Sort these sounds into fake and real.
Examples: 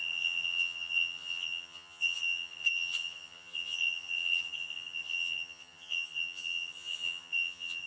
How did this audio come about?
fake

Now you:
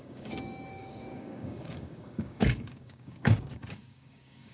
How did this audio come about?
fake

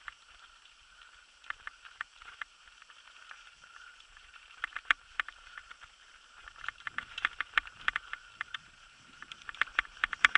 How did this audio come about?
fake